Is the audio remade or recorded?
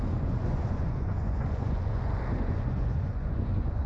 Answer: remade